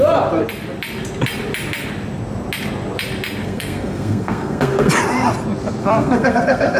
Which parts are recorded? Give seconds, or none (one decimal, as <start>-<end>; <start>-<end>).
0.0-3.4; 4.9-5.8